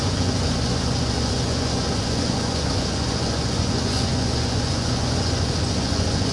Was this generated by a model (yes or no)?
yes